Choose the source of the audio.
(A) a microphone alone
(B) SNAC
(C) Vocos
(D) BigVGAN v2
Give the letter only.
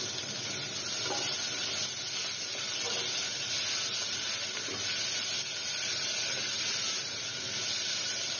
A